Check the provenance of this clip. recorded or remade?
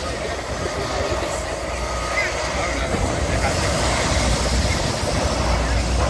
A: recorded